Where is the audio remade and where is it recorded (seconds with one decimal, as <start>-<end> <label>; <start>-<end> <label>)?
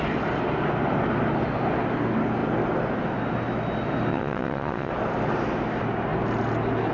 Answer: 0.0-4.1 recorded; 4.1-4.9 remade; 4.9-6.9 recorded